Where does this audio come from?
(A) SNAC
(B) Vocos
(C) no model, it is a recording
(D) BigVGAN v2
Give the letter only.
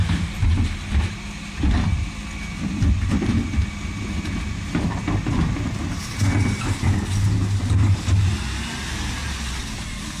C